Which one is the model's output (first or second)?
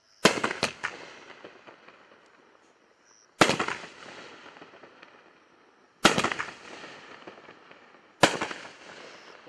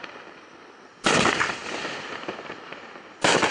second